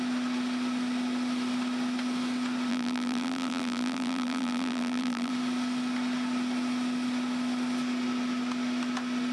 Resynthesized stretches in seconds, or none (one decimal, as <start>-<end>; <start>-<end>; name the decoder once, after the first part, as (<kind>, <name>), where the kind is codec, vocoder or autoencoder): 2.7-5.3 (vocoder, BigVGAN v2)